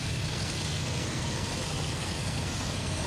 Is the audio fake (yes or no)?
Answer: yes